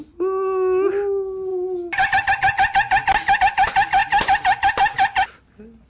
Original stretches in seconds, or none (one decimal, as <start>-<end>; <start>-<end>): 0.0-5.9